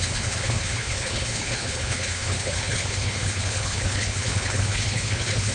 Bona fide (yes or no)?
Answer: no